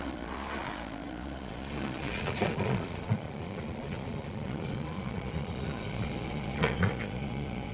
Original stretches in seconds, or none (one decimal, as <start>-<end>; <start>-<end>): none